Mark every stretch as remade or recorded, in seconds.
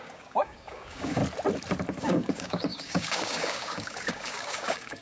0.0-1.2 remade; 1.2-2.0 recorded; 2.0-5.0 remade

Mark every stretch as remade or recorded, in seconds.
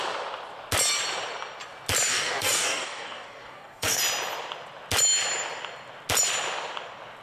0.0-2.1 recorded; 2.1-4.0 remade; 4.0-7.2 recorded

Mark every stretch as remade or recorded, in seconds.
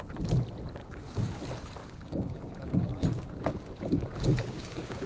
0.0-0.8 recorded; 0.8-1.4 remade; 1.4-1.8 recorded; 1.8-5.1 remade